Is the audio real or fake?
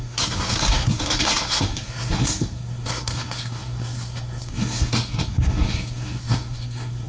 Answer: fake